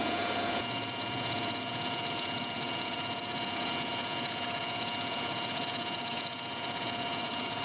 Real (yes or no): no